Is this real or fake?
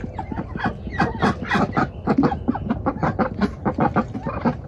real